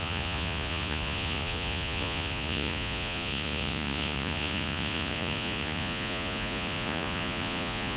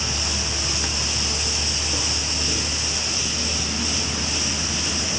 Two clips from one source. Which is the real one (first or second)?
second